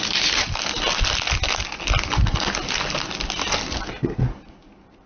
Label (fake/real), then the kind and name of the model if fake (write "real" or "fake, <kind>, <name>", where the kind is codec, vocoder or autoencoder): real